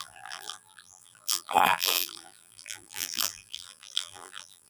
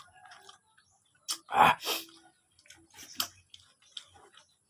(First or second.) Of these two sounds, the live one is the second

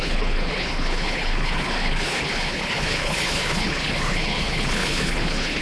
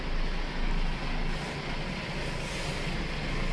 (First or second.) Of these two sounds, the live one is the second